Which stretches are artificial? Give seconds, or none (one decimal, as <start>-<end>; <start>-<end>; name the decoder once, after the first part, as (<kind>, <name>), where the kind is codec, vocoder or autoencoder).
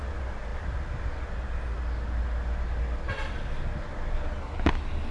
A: none